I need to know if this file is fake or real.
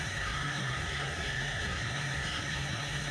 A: fake